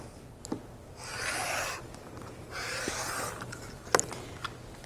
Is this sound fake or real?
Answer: real